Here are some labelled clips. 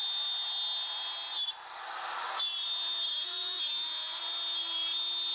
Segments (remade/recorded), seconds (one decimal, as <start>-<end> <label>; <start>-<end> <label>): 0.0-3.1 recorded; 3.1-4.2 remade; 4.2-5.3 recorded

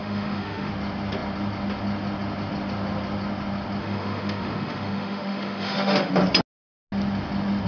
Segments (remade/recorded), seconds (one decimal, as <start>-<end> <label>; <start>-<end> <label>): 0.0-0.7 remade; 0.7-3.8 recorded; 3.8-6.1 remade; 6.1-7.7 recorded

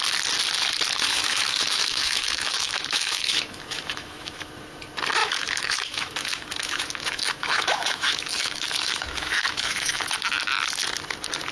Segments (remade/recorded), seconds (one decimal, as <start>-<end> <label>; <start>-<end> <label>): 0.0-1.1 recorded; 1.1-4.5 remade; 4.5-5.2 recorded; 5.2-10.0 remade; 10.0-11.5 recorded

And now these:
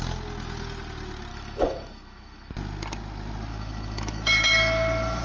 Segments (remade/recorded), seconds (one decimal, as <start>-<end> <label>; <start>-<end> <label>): 0.0-1.3 recorded; 1.3-2.5 remade; 2.5-3.5 recorded; 3.5-5.2 remade